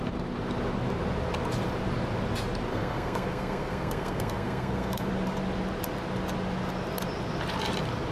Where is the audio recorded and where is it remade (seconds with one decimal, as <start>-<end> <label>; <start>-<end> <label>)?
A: 0.0-2.7 recorded; 2.7-5.1 remade; 5.1-8.1 recorded